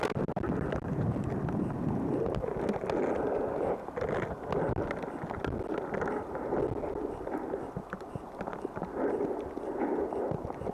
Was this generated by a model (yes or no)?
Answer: no